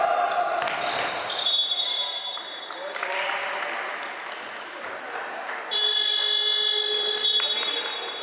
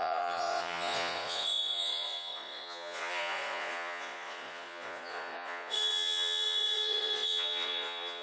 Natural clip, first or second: first